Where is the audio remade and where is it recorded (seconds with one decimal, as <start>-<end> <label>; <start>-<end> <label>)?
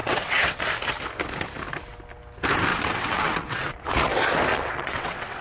0.0-0.6 remade; 0.6-2.7 recorded; 2.7-4.1 remade; 4.1-4.5 recorded; 4.5-5.4 remade